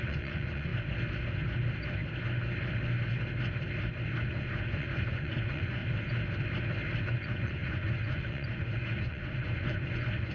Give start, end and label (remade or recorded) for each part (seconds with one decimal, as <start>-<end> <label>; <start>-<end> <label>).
0.0-0.7 remade; 0.7-4.2 recorded; 4.2-5.8 remade; 5.8-7.0 recorded; 7.0-10.3 remade